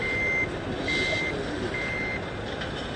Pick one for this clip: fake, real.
real